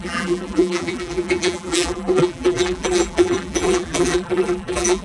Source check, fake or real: fake